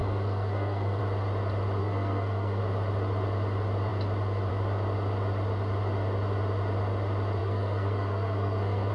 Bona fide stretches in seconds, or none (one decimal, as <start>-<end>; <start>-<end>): 1.0-1.8; 2.6-7.4